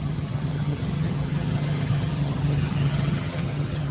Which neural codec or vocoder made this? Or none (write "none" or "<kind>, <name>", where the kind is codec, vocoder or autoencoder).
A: vocoder, HiFi-GAN